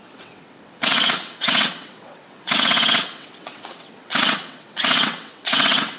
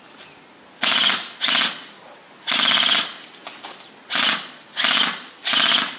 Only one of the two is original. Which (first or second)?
second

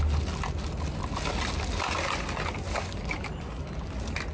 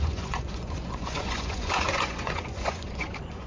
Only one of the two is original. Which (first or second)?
first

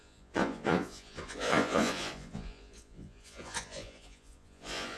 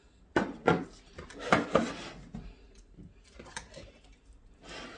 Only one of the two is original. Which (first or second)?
second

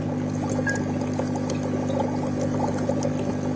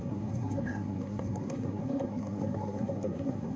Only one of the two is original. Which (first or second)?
first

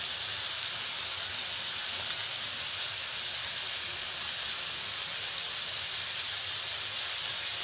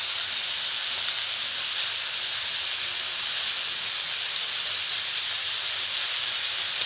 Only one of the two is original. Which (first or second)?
second